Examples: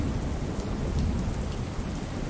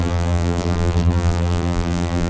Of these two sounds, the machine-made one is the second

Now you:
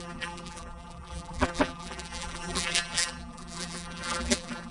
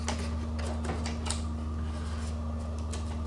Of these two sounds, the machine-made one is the first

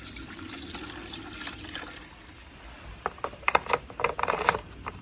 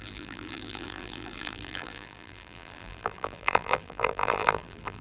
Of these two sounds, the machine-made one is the second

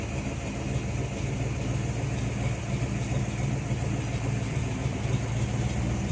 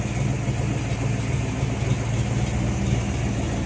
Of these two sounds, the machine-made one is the first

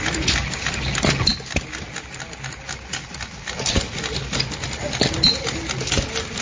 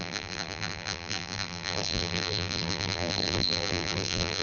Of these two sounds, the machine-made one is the second